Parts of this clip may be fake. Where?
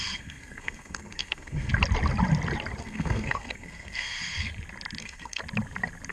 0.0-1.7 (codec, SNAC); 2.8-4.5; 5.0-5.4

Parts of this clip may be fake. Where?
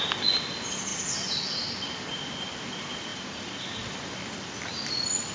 none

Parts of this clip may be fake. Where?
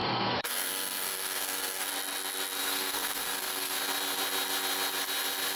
0.0-1.9 (codec, SNAC); 2.6-3.8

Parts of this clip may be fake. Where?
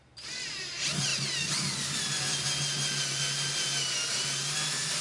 none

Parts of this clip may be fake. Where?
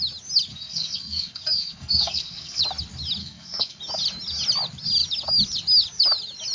0.5-2.6 (codec, SNAC); 3.2-3.8